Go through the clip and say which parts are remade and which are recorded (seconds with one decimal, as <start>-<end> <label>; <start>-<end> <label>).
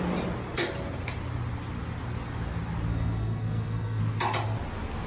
0.0-2.9 recorded; 2.9-4.0 remade; 4.0-5.1 recorded